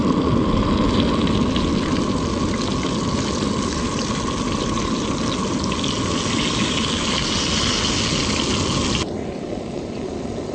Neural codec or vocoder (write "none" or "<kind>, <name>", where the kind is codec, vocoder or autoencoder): none